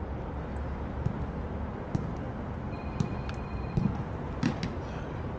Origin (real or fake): real